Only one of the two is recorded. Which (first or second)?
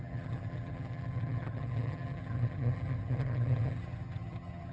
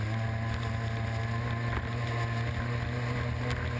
second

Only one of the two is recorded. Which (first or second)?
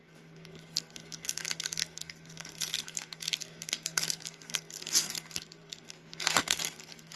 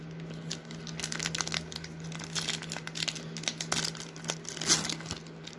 second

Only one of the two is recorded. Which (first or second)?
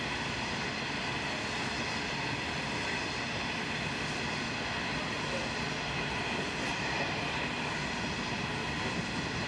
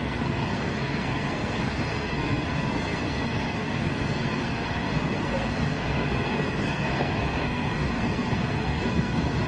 first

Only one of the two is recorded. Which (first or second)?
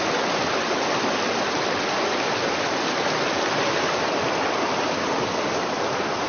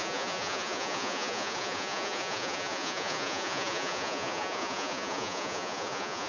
first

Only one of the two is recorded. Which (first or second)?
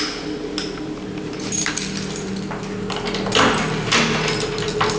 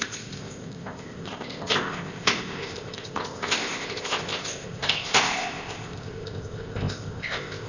first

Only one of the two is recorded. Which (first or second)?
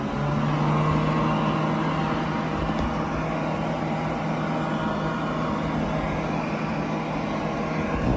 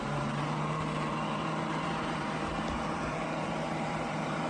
first